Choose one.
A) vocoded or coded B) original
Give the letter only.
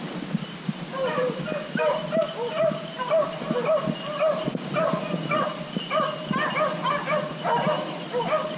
B